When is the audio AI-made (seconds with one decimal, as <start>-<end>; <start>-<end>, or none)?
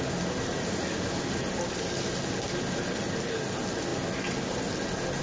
none